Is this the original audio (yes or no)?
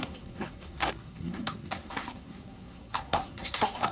no